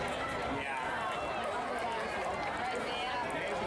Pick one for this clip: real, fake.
real